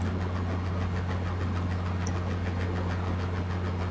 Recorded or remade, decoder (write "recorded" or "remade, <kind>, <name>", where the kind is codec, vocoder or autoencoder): recorded